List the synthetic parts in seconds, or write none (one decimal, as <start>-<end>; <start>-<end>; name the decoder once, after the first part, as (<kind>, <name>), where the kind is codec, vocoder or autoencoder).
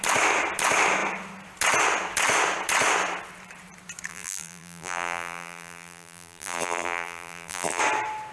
4.1-7.8 (vocoder, BigVGAN v2)